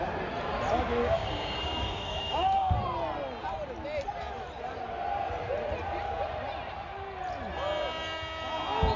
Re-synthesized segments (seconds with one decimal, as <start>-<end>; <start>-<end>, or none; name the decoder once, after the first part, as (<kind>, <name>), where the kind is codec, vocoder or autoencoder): 1.0-2.7 (codec, DAC)